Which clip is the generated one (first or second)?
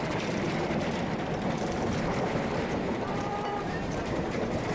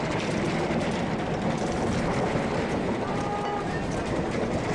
first